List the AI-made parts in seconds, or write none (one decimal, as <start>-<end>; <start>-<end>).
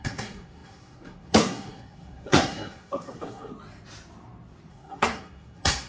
0.0-3.5; 4.7-5.9